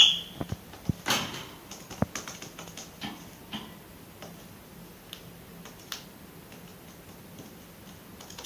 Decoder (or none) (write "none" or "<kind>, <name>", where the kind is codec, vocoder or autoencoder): none